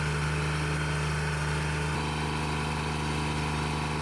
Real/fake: real